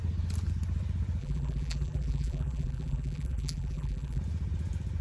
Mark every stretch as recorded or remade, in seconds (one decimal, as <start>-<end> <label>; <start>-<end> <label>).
0.0-1.2 recorded; 1.2-4.2 remade; 4.2-5.0 recorded